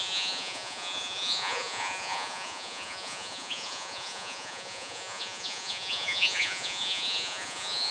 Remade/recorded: remade